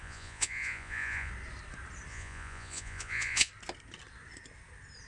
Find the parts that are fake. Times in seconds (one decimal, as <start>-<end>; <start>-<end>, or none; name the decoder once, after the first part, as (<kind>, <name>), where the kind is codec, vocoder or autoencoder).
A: 0.0-1.3 (vocoder, Vocos); 2.1-3.5